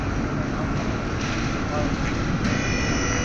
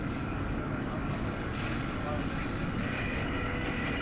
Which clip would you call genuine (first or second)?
first